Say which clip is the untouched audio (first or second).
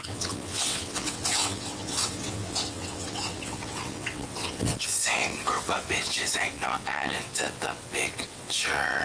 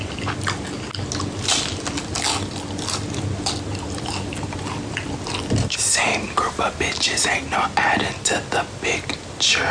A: second